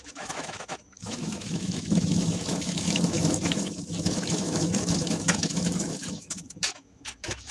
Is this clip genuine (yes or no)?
no